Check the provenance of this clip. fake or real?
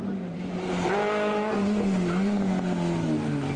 real